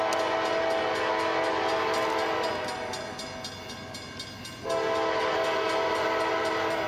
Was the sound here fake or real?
real